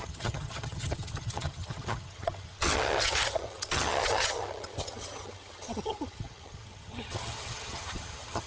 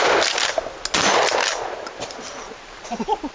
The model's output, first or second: first